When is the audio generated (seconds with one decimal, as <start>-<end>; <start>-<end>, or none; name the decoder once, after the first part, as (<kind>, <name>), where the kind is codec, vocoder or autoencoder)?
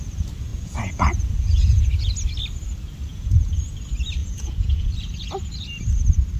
0.5-2.1 (vocoder, Vocos); 3.1-3.6; 4.2-4.9